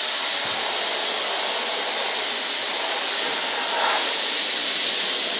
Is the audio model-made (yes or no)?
no